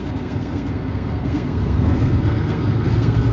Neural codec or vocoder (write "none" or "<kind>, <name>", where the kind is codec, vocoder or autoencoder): codec, SNAC